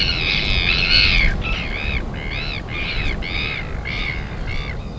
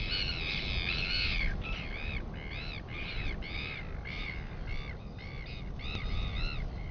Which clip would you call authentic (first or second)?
first